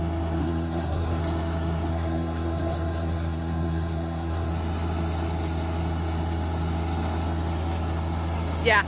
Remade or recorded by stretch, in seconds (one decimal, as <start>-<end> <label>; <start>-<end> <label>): 0.0-0.4 recorded; 0.4-1.2 remade; 1.2-1.9 recorded; 1.9-4.5 remade; 4.5-8.9 recorded